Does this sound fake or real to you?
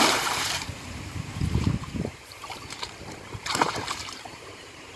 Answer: fake